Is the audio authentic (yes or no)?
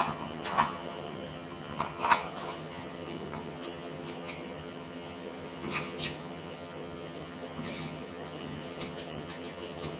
no